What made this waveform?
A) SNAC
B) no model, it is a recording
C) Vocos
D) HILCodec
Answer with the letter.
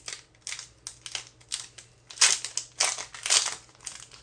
B